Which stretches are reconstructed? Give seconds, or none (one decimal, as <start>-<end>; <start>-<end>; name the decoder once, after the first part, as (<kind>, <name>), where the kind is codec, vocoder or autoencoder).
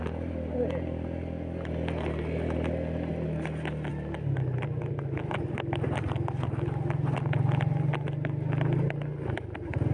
none